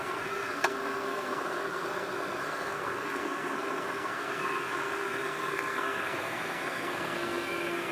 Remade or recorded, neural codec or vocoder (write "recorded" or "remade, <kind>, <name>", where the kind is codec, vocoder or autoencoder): remade, codec, SNAC